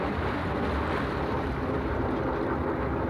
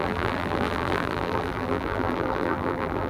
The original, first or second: first